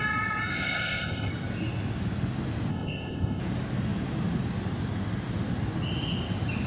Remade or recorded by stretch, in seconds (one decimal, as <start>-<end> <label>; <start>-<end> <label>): 0.0-0.5 recorded; 0.5-1.3 remade; 1.3-2.7 recorded; 2.7-3.4 remade; 3.4-6.7 recorded